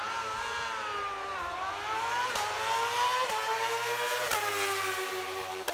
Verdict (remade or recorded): remade